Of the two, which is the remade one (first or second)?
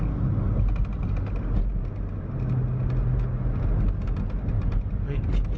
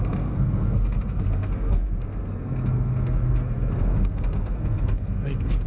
second